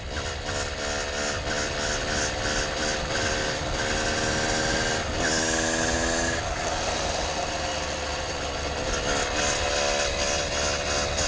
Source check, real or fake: real